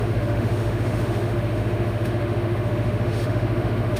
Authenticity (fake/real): fake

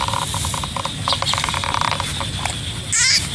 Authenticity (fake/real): real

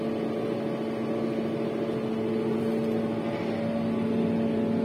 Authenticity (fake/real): real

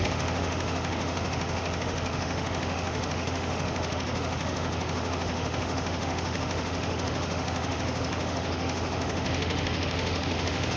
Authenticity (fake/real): fake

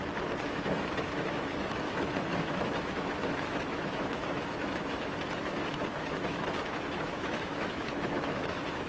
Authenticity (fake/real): fake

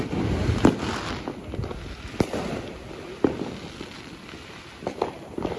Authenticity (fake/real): real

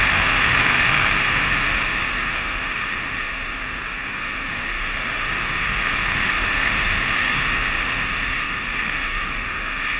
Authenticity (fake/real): fake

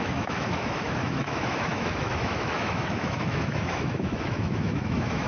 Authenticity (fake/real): fake